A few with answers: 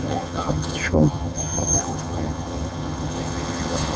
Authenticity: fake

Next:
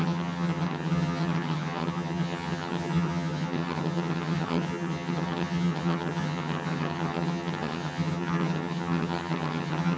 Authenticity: fake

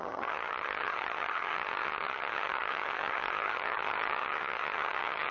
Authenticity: fake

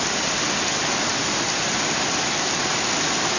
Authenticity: real